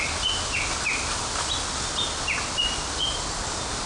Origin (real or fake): real